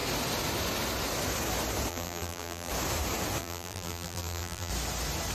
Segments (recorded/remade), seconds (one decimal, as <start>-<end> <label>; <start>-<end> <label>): 0.0-1.9 recorded; 1.9-2.7 remade; 2.7-3.4 recorded; 3.4-4.7 remade; 4.7-5.3 recorded